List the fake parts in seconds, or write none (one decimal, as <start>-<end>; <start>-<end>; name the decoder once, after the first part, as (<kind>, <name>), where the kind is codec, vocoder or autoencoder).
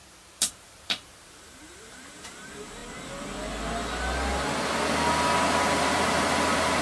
0.5-2.8 (vocoder, BigVGAN v2); 5.8-6.8